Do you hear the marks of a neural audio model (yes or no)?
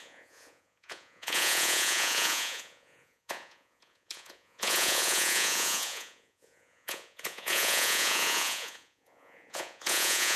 yes